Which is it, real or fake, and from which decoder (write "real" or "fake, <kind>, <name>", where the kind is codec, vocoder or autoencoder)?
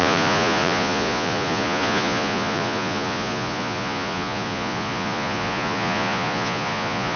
fake, vocoder, Vocos